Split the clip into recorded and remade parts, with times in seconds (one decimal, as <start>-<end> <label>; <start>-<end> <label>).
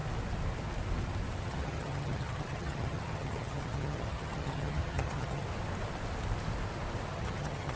0.0-1.4 recorded; 1.4-5.4 remade; 5.4-7.1 recorded; 7.1-7.8 remade